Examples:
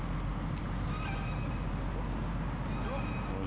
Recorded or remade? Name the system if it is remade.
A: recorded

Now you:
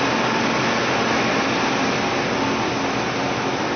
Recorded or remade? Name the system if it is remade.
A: recorded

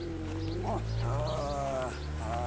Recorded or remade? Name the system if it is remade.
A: recorded